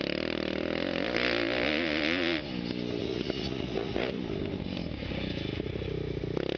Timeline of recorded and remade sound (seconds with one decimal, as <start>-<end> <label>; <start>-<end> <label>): 0.0-3.0 recorded; 3.0-4.2 remade; 4.2-6.6 recorded